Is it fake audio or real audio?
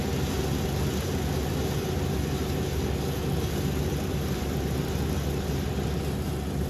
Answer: real